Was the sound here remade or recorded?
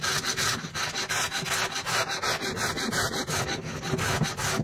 recorded